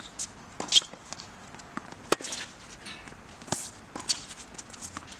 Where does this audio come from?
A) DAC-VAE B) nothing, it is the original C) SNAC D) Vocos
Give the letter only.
B